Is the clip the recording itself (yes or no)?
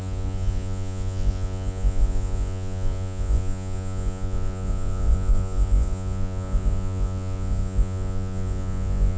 no